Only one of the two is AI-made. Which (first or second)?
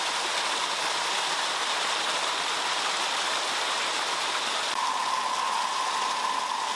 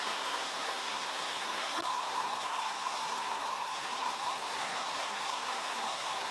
second